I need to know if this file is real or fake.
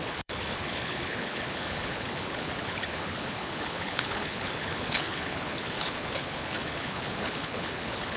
fake